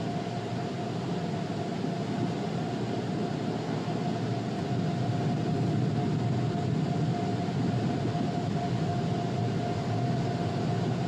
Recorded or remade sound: recorded